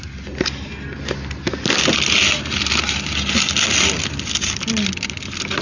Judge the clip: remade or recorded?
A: recorded